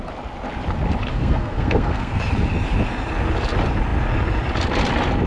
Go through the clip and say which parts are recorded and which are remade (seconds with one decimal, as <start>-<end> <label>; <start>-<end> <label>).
0.0-1.1 recorded; 1.1-2.2 remade; 2.2-5.3 recorded